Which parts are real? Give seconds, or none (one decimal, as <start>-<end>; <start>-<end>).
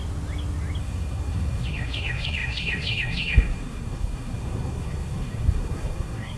0.0-0.8